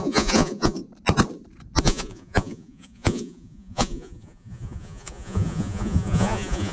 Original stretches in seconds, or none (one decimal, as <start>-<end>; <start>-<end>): 0.8-1.8